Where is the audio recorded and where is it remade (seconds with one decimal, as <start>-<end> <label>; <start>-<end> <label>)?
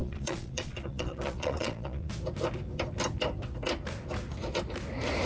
0.0-2.1 remade; 2.1-5.3 recorded